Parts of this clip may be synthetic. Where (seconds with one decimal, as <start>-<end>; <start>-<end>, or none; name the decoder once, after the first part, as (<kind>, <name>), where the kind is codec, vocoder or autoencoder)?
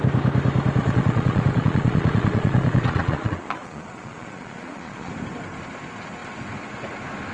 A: 0.8-5.1 (vocoder, Vocos)